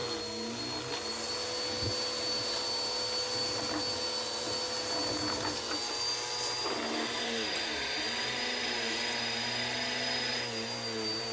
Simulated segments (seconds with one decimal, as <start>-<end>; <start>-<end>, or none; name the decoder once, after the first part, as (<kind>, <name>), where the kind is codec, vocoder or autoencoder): none